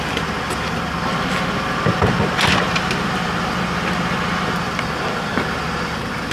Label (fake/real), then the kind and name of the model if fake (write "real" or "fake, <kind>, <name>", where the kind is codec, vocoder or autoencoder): real